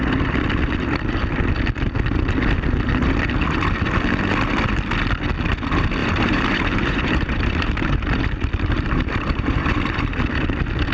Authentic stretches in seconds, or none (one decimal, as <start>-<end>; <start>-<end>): 0.0-6.0; 10.2-10.9